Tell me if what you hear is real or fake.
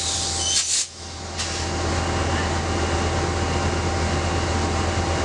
real